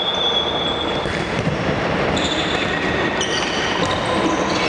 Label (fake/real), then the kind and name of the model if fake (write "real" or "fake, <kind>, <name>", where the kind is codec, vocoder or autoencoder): fake, vocoder, BigVGAN v2